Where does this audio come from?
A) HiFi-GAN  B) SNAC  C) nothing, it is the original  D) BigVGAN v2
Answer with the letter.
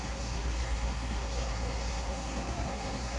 B